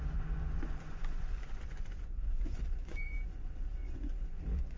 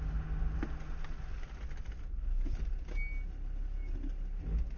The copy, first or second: first